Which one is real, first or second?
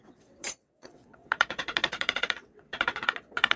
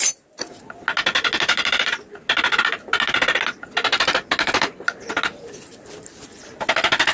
second